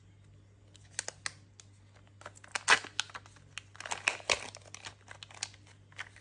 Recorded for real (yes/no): yes